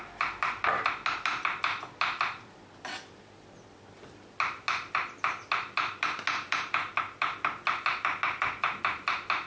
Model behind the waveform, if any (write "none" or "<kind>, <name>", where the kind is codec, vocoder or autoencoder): none